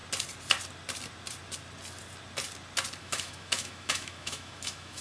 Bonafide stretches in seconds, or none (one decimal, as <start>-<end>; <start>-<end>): 0.0-3.0